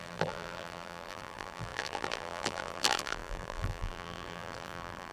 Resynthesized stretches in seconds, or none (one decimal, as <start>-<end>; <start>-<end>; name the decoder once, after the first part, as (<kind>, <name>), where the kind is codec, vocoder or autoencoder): 0.0-5.1 (vocoder, BigVGAN v2)